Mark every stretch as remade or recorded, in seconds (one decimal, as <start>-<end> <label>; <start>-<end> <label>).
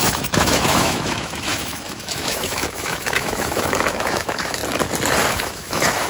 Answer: 0.0-4.6 remade; 4.6-5.3 recorded; 5.3-6.1 remade